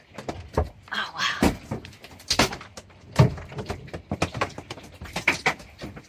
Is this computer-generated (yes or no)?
no